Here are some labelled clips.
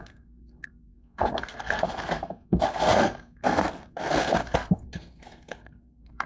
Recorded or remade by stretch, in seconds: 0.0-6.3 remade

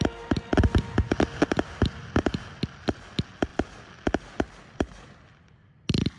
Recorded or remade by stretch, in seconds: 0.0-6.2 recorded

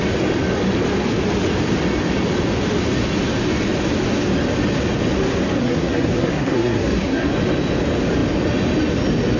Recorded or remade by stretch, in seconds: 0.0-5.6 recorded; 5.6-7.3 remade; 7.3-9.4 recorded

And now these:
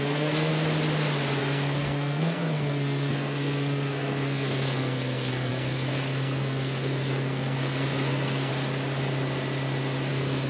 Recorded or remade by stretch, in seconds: 0.0-0.5 remade; 0.5-1.4 recorded; 1.4-8.5 remade; 8.5-10.1 recorded; 10.1-10.5 remade

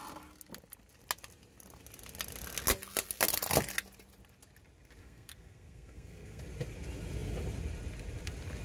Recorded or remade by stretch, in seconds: 0.0-5.0 recorded; 5.0-6.4 remade; 6.4-8.6 recorded

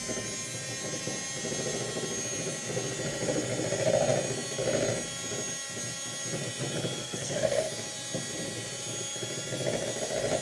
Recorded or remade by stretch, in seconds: 0.0-7.0 recorded; 7.0-7.7 remade; 7.7-10.4 recorded